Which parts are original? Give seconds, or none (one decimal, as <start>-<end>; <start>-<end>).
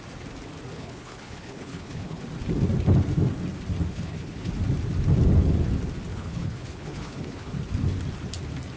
0.0-0.7; 2.2-3.9; 4.5-6.1; 7.5-8.8